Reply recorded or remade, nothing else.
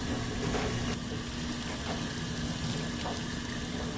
recorded